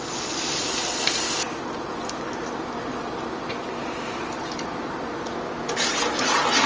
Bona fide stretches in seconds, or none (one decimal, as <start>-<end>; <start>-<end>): 0.0-6.7